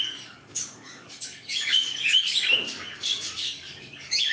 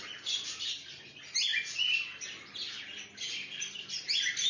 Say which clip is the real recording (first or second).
second